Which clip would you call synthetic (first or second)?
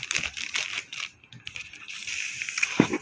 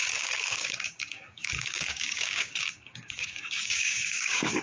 second